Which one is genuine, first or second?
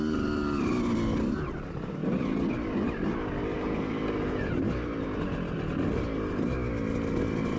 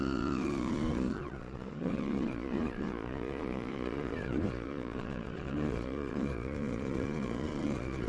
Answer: first